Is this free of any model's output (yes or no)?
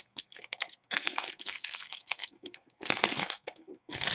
no